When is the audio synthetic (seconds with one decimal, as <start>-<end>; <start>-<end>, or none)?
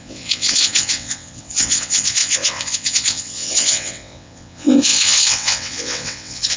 0.0-6.6